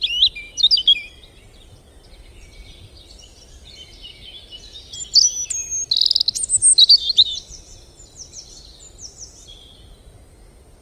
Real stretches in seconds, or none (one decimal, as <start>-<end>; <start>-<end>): 0.0-10.8